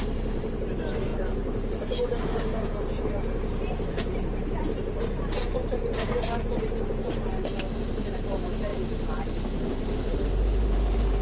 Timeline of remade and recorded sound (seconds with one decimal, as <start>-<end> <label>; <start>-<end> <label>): 0.0-11.2 remade